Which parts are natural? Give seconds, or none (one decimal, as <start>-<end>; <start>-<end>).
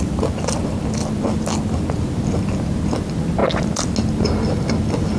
0.0-5.2